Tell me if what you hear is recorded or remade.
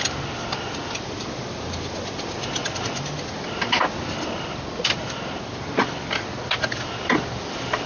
recorded